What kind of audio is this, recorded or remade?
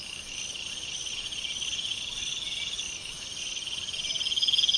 recorded